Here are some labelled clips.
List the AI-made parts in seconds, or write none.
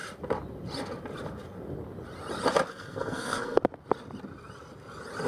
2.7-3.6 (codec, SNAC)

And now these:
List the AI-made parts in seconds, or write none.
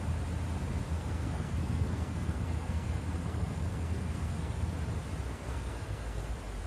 0.9-4.7 (codec, SNAC); 5.3-6.3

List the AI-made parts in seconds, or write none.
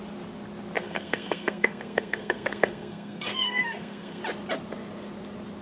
0.8-4.2 (codec, SNAC)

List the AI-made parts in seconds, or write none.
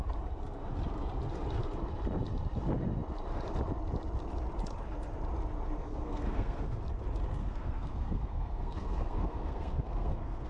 5.8-6.8 (codec, SNAC); 7.4-10.5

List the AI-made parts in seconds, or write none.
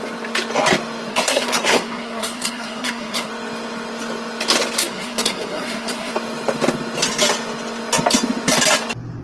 1.1-3.3 (codec, SNAC); 4.8-6.1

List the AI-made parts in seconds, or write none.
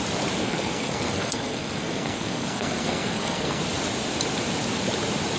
0.4-3.6 (codec, SNAC)